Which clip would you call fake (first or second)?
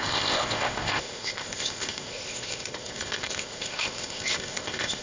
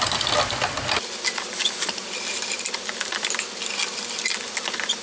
first